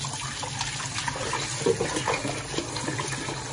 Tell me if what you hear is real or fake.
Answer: real